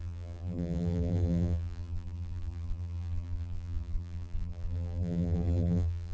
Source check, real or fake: fake